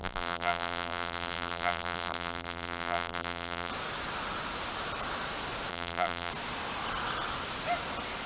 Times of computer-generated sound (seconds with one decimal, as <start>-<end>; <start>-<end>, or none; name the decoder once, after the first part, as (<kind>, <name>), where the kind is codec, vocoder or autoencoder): 0.0-3.7 (vocoder, BigVGAN v2); 5.7-6.3